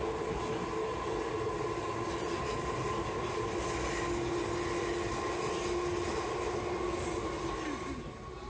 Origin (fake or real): real